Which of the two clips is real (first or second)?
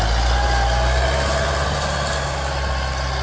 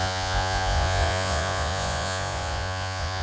first